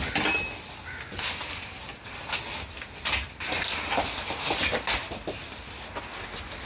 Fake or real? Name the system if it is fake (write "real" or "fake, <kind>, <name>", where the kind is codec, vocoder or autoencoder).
real